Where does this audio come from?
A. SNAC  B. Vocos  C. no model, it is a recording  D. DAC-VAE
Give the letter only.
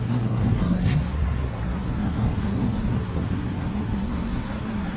A